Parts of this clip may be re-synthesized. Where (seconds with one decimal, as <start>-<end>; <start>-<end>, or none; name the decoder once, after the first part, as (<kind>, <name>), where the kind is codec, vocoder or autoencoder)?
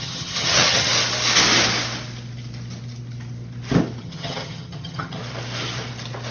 0.0-0.9 (vocoder, HiFi-GAN); 4.0-5.2